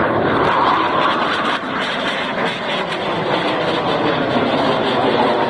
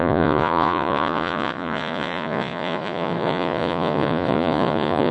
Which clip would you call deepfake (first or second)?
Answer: second